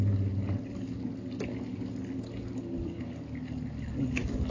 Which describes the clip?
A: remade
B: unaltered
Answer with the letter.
B